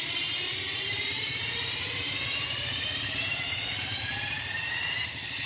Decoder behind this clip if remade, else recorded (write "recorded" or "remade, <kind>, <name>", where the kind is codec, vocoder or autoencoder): remade, vocoder, BigVGAN v2